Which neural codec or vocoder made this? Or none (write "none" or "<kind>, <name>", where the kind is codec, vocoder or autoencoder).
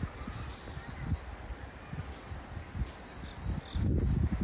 none